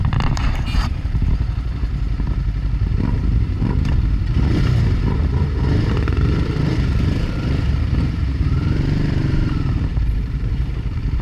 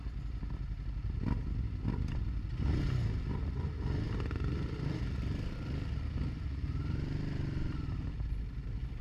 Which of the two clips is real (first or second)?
second